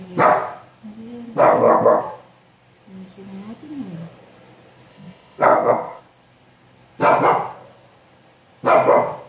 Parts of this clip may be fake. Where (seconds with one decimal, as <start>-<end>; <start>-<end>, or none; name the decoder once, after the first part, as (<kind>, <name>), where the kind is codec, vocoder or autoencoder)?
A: 1.4-2.0 (codec, ZipCodec); 4.9-6.0